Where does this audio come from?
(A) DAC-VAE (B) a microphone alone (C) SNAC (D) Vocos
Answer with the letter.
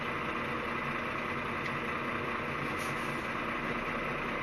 B